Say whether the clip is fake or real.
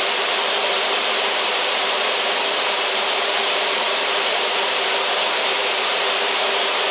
fake